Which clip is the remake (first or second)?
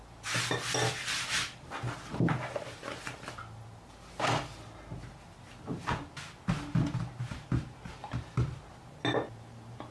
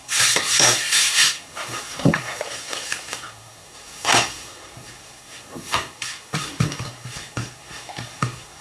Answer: second